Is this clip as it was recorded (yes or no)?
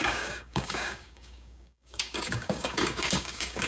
no